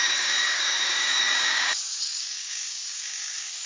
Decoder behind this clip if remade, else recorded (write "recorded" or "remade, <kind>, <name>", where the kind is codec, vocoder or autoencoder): remade, codec, DAC